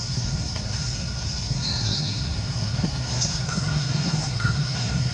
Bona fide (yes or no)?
no